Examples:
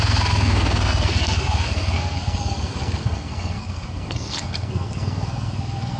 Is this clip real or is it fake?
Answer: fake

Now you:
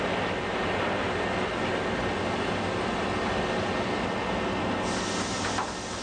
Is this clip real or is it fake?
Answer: real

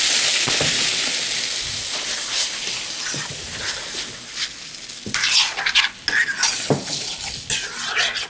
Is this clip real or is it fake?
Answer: real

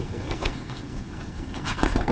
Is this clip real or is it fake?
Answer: fake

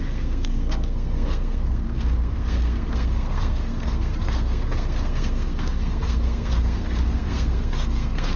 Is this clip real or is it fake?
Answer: fake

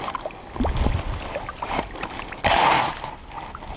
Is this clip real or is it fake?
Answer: real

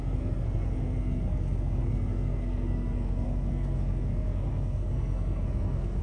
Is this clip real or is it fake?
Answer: fake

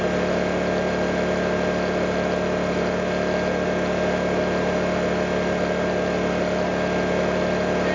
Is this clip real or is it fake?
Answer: real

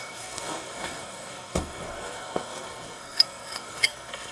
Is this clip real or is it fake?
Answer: fake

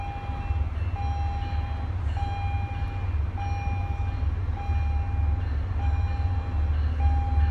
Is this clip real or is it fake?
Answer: real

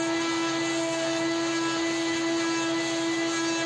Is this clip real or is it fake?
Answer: real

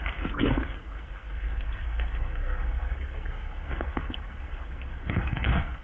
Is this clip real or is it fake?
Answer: fake